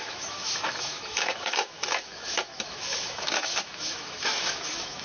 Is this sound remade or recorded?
remade